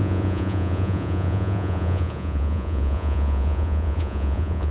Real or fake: fake